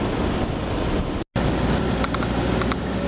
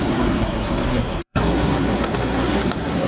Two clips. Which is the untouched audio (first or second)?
first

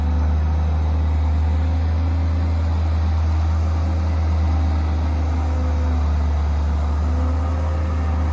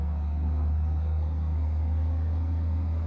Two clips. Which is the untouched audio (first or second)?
first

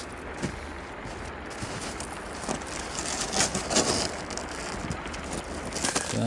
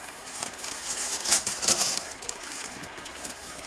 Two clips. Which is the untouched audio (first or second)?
first